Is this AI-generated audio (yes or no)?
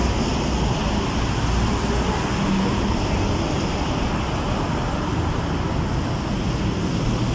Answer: no